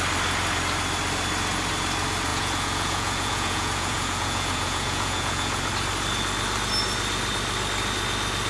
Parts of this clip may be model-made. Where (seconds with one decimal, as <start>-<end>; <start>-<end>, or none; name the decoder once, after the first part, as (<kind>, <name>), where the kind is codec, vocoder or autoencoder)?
2.3-5.7 (vocoder, Vocos)